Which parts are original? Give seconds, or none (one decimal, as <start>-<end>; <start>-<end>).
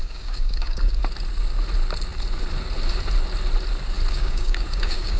1.0-4.1